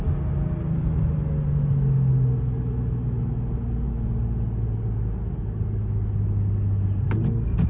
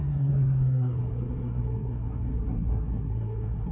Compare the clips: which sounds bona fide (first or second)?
first